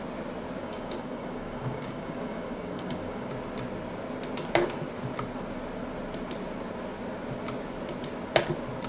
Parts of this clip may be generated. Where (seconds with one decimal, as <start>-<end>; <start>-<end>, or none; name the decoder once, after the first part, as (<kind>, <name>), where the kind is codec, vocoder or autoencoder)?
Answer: 0.6-3.3 (codec, DAC)